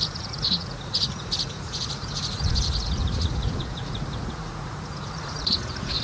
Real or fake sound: fake